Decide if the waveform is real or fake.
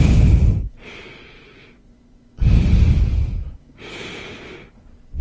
real